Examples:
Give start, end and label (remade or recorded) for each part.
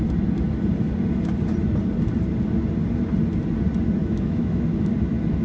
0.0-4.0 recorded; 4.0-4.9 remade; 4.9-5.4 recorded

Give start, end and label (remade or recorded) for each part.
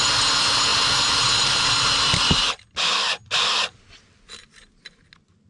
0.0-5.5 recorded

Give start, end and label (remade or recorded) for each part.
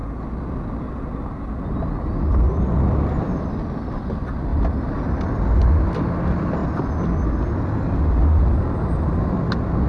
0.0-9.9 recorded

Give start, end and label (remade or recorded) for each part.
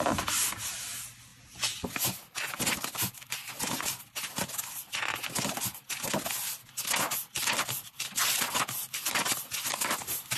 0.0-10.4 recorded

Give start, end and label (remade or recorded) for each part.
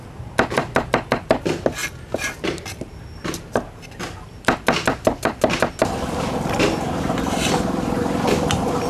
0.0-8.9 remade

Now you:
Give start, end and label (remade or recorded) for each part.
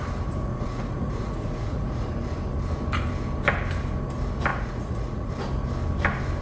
0.0-0.5 recorded; 0.5-2.1 remade; 2.1-4.5 recorded; 4.5-5.3 remade; 5.3-6.4 recorded